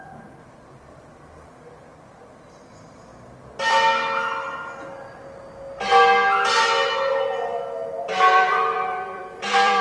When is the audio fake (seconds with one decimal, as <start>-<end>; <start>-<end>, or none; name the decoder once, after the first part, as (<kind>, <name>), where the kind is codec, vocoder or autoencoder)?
0.0-3.1 (vocoder, BigVGAN v2); 7.1-9.8